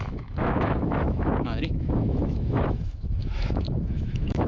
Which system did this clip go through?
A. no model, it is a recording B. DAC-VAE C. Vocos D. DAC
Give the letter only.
B